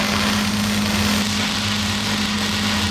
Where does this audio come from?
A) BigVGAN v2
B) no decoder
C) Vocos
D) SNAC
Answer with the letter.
B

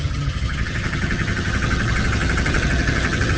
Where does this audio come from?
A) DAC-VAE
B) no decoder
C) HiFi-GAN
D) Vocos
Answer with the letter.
C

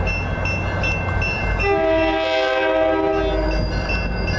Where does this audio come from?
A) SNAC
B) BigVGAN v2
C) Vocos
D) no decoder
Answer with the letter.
D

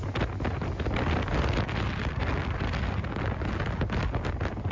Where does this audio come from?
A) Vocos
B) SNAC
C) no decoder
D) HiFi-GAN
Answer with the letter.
C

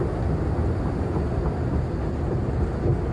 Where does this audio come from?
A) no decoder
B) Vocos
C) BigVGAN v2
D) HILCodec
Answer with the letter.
A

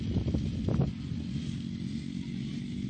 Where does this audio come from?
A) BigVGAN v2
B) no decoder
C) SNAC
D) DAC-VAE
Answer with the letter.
B